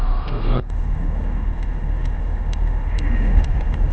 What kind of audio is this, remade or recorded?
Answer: remade